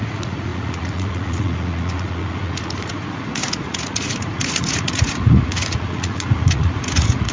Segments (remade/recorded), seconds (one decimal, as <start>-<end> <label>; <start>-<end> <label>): 0.0-7.3 remade